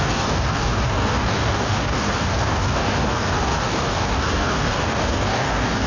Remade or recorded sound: remade